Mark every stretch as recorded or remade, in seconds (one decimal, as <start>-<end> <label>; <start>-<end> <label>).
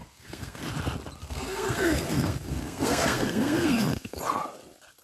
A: 0.0-0.6 remade; 0.6-1.2 recorded; 1.2-4.2 remade; 4.2-5.0 recorded